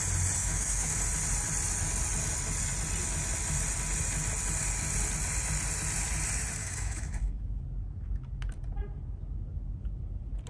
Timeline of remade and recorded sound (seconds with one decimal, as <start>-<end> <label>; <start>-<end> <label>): 0.0-0.4 recorded; 0.4-1.0 remade; 1.0-6.6 recorded; 6.6-7.4 remade; 7.4-10.5 recorded